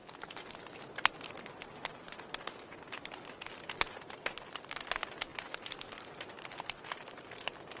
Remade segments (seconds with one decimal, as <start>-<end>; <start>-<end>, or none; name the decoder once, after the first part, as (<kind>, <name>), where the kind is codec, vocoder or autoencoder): none